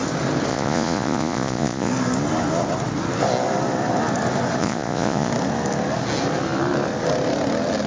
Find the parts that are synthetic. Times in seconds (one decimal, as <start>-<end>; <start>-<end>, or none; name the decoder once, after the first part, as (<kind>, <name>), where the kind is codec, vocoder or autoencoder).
0.5-1.9 (vocoder, Vocos); 4.6-5.3